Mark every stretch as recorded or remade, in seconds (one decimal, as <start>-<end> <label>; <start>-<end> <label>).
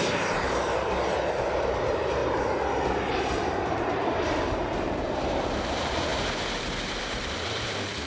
0.0-2.2 remade; 2.2-3.1 recorded; 3.1-8.1 remade